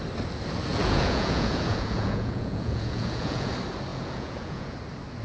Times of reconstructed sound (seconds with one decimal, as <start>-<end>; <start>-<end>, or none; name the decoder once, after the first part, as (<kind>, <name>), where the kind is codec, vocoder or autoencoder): 0.7-3.5 (vocoder, Vocos); 3.9-4.8